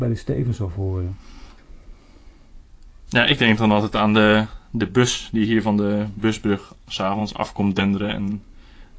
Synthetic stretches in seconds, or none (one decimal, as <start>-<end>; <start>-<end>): 0.0-8.3